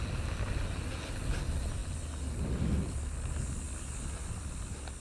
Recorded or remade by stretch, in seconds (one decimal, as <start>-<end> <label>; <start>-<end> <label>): 0.0-5.0 recorded